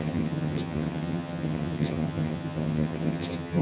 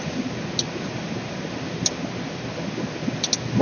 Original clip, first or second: second